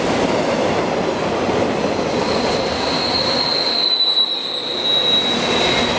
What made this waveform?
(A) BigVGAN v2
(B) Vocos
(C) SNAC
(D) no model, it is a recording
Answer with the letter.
D